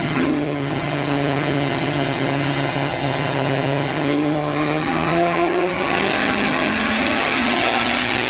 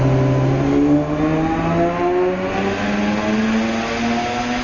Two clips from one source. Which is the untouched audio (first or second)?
second